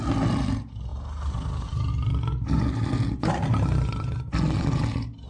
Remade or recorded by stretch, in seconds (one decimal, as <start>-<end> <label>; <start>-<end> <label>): 0.0-0.9 recorded; 0.9-1.9 remade; 1.9-5.3 recorded